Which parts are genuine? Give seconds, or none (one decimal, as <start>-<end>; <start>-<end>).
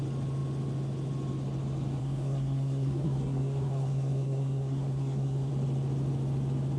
0.0-2.0; 5.5-6.8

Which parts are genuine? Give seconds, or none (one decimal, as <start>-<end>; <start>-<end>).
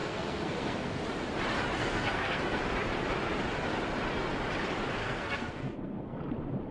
1.0-1.8; 2.6-5.0; 6.2-6.7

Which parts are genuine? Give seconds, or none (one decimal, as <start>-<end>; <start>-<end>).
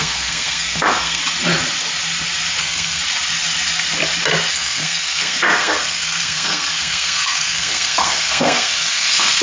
1.2-2.6; 3.0-4.5